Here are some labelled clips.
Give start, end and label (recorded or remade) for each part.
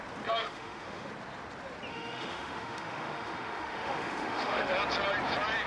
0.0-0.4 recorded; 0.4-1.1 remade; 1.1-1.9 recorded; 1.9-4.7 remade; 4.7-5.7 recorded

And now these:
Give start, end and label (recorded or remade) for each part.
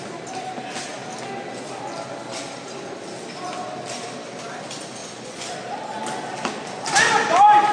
0.0-5.0 recorded; 5.0-5.5 remade; 5.5-7.7 recorded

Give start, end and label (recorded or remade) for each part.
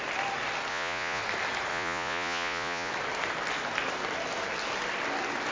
0.0-0.7 recorded; 0.7-1.2 remade; 1.2-1.7 recorded; 1.7-2.9 remade; 2.9-5.5 recorded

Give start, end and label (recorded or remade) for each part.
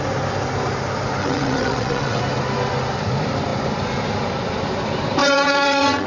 0.0-1.2 recorded; 1.2-2.2 remade; 2.2-5.2 recorded; 5.2-6.1 remade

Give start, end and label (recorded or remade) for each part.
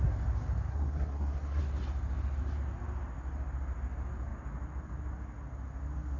0.0-0.7 recorded; 0.7-1.6 remade; 1.6-6.2 recorded